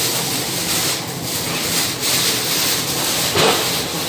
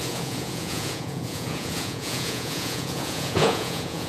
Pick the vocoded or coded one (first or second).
second